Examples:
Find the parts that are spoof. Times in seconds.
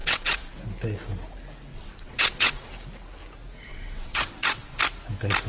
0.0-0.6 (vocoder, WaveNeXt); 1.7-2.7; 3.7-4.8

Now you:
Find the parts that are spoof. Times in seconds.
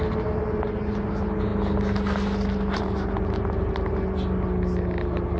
none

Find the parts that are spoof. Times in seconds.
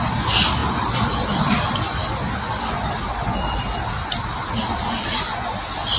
none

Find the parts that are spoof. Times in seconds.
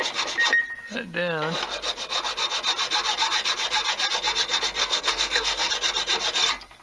4.8-5.7 (codec, SNAC)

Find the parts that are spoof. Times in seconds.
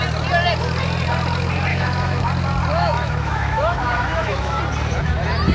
1.7-2.2 (autoencoder, DAC-VAE); 2.7-4.6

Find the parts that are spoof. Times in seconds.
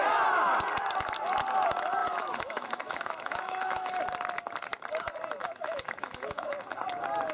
2.0-4.0 (autoencoder, DAC-VAE); 5.4-6.7